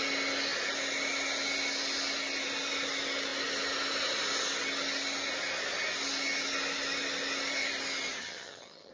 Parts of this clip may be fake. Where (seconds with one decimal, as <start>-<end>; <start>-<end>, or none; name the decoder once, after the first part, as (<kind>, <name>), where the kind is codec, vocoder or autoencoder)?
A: 8.2-8.9 (vocoder, HiFi-GAN)